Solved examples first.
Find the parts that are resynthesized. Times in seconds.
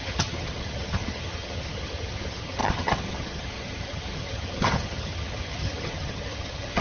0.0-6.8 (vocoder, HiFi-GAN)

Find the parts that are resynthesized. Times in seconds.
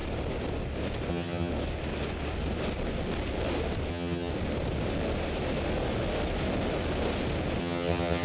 1.1-1.5 (vocoder, HiFi-GAN); 3.9-4.3; 7.6-8.2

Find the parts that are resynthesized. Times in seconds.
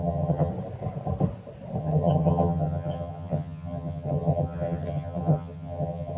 0.0-0.5 (vocoder, HiFi-GAN); 1.8-6.2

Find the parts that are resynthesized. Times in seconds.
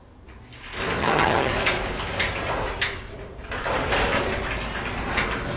1.0-1.5 (vocoder, HiFi-GAN)